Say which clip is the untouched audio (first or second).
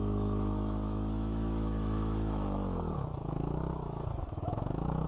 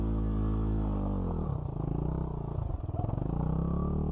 second